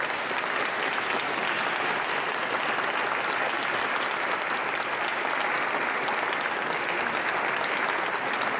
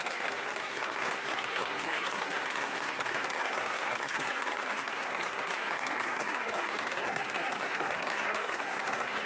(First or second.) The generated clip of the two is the second